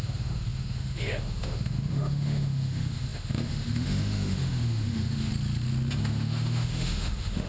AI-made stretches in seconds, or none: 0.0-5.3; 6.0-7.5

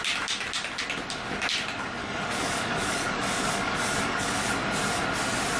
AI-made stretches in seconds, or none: 2.0-4.5